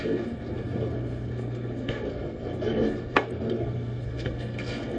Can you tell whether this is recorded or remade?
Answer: remade